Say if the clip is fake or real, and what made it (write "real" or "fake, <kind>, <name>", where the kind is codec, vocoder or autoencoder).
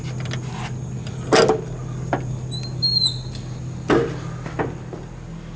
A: real